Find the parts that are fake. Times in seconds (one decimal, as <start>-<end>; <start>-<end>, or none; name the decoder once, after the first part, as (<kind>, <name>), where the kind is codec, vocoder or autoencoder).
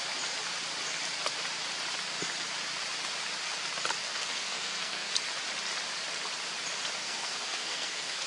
4.0-5.1 (codec, SNAC); 7.0-8.3